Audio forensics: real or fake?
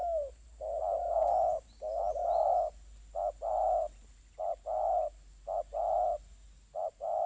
real